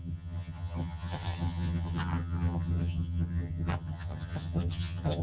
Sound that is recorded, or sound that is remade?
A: remade